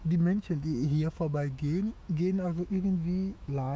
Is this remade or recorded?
remade